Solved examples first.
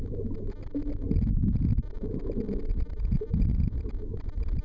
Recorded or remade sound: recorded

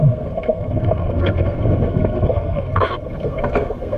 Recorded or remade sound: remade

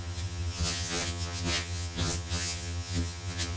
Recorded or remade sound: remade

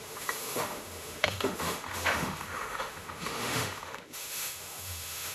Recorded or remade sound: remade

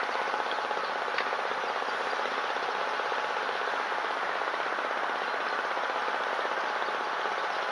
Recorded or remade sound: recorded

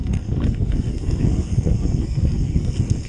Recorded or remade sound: remade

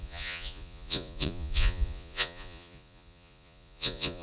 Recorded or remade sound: remade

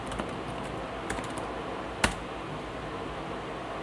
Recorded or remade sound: recorded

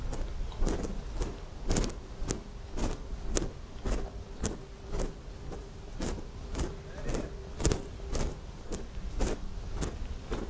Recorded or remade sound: recorded